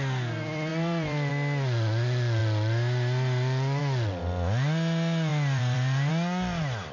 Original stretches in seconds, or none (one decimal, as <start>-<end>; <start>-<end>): 0.0-0.7; 1.3-5.3; 6.1-6.9